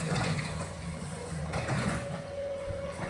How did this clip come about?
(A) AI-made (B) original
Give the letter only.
A